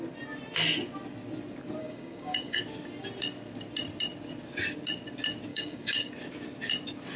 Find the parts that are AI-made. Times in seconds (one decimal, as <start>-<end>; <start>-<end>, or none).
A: 1.8-2.6; 5.5-6.1